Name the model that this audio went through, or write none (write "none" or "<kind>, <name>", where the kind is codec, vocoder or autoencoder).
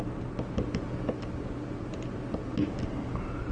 none